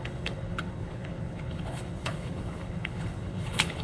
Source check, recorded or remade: remade